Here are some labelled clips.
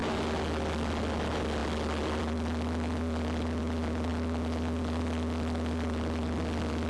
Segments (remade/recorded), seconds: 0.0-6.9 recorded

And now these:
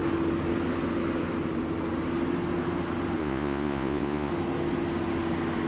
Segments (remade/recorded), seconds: 0.0-3.2 recorded; 3.2-4.3 remade; 4.3-5.7 recorded

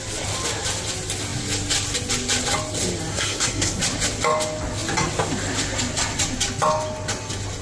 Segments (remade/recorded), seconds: 0.0-3.1 recorded; 3.1-3.8 remade; 3.8-7.6 recorded

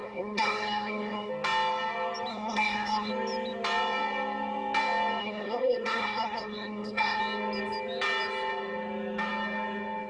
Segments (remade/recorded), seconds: 0.0-1.3 remade; 1.3-2.3 recorded; 2.3-3.1 remade; 3.1-5.2 recorded; 5.2-7.2 remade; 7.2-10.1 recorded

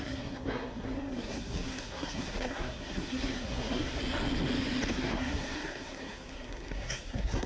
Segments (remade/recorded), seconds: 0.0-4.0 remade; 4.0-4.9 recorded; 4.9-7.5 remade